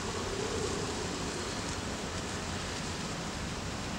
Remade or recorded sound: remade